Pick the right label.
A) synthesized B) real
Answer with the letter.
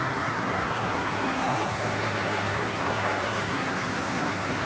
A